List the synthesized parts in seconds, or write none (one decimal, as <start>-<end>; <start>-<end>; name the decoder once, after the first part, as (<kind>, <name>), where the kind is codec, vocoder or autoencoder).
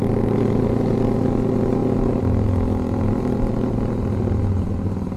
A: none